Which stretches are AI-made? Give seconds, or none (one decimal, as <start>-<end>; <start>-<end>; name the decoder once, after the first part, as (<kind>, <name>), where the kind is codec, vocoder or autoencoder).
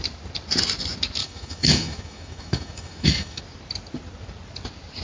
1.2-3.4 (autoencoder, DAC-VAE)